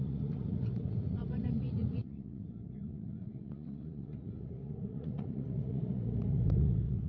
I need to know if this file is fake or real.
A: fake